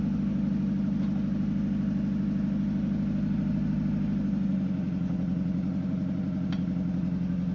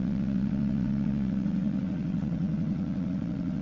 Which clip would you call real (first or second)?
first